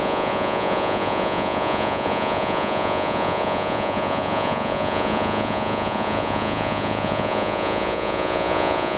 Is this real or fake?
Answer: fake